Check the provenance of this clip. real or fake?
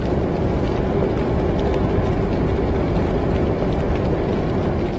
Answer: real